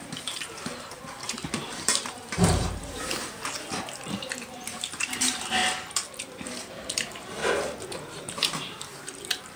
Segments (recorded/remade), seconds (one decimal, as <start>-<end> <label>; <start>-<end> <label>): 0.0-5.6 remade; 5.6-6.7 recorded; 6.7-7.4 remade; 7.4-8.0 recorded; 8.0-9.6 remade